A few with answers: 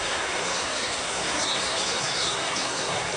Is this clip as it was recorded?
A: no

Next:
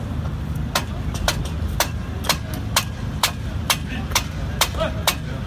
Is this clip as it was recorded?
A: yes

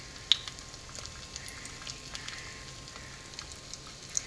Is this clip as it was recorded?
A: yes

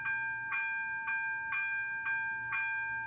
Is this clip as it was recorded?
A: yes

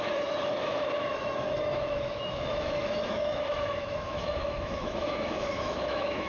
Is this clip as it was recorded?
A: no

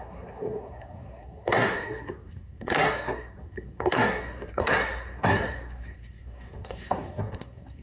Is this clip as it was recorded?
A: no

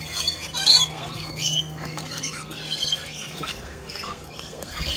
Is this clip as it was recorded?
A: no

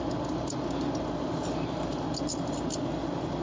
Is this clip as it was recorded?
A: yes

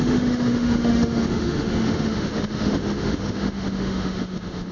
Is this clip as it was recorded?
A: no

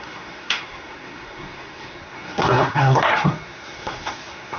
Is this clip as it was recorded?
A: no